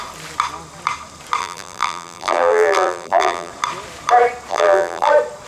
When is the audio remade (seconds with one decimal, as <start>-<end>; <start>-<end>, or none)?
1.4-3.5; 4.5-5.1